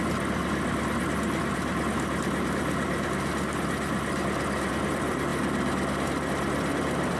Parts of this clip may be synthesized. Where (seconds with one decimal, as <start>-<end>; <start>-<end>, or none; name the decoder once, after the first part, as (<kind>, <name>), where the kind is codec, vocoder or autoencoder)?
0.0-0.4 (vocoder, BigVGAN v2); 4.7-7.2